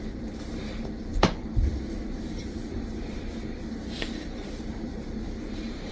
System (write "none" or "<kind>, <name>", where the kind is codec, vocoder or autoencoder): vocoder, BigVGAN v2